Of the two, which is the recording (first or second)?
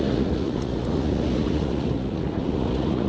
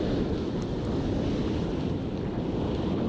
second